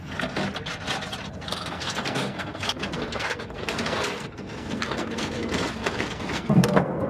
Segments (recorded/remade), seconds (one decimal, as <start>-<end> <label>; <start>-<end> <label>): 0.0-0.4 remade; 0.4-1.3 recorded; 1.3-7.1 remade